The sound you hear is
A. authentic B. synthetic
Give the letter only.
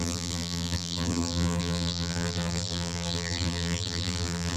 B